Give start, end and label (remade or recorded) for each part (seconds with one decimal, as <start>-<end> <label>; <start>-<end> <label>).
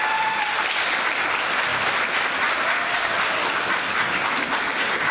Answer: 0.0-1.7 recorded; 1.7-3.3 remade; 3.3-5.1 recorded